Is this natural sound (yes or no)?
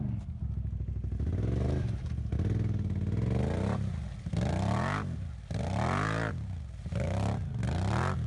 yes